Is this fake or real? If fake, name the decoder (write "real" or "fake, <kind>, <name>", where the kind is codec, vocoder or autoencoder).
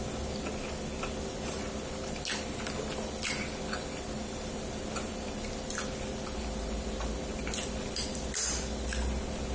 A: real